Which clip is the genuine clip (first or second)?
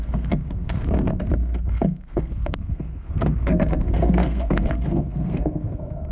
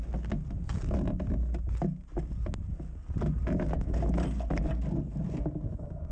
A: second